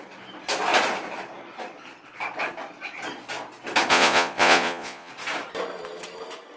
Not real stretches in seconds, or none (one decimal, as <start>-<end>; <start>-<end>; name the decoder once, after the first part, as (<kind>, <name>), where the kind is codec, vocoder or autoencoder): 3.9-5.1 (vocoder, Vocos)